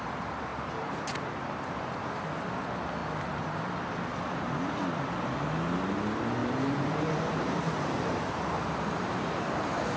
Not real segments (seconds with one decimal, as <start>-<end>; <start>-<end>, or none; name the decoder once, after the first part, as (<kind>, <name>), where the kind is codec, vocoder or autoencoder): 0.5-2.3 (vocoder, BigVGAN v2); 6.4-10.0